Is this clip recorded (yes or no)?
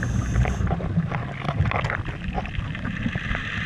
yes